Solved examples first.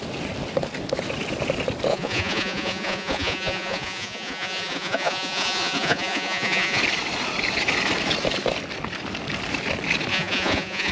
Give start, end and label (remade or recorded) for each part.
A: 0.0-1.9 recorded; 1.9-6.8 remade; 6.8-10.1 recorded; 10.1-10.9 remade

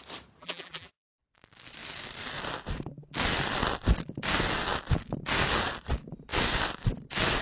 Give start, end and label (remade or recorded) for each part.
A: 0.0-0.4 recorded; 0.4-1.2 remade; 1.2-7.4 recorded

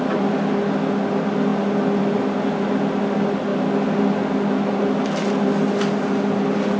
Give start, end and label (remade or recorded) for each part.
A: 0.0-6.8 recorded

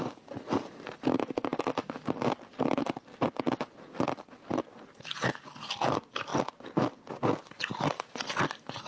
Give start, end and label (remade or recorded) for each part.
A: 0.0-8.9 recorded

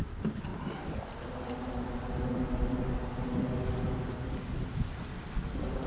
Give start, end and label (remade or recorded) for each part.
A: 0.0-5.9 recorded

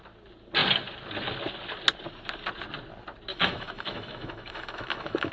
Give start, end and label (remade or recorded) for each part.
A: 0.0-3.3 recorded; 3.3-5.3 remade